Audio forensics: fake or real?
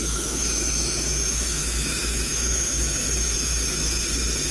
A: fake